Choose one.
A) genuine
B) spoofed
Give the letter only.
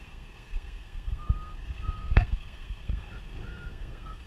B